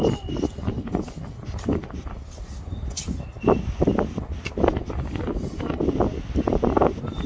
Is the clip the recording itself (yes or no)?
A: yes